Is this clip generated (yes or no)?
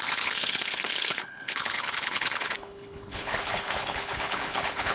yes